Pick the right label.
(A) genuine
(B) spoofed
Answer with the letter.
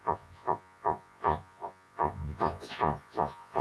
B